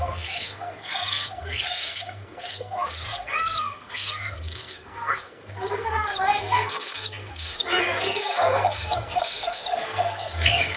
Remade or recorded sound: remade